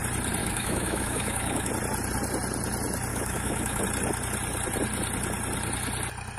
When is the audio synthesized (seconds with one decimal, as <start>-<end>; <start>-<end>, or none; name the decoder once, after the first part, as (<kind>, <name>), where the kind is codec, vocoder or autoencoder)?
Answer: 0.4-1.7 (autoencoder, DAC-VAE); 3.1-3.8